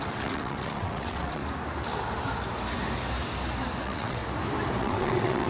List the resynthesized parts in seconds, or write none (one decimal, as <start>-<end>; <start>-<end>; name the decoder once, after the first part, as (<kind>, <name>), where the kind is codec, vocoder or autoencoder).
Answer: 0.0-1.4 (vocoder, WaveNeXt); 3.8-4.2; 4.8-5.5